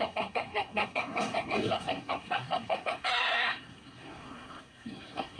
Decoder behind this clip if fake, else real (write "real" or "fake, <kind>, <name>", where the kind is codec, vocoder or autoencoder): fake, codec, SNAC